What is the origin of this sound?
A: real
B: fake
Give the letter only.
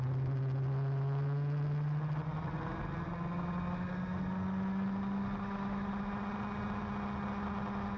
A